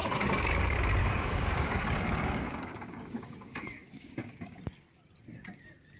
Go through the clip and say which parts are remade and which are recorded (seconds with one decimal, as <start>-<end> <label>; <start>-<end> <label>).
0.0-0.6 remade; 0.6-1.0 recorded; 1.0-4.6 remade; 4.6-6.0 recorded